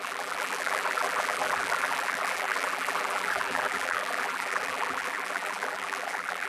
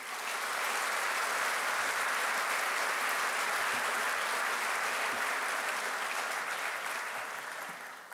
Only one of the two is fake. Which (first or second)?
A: first